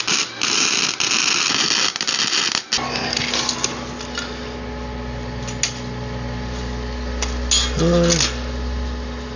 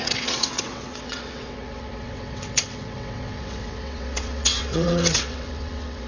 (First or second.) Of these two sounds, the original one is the first